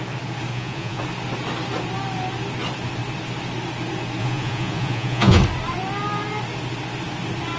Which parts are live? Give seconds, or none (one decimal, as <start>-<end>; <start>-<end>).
0.0-0.5; 1.0-4.2; 5.4-7.6